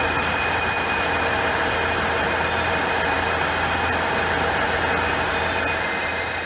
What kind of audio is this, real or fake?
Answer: real